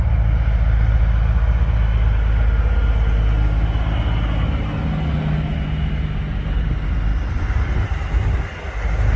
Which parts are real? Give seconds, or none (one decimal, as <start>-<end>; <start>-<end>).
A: 0.0-7.1; 8.7-9.2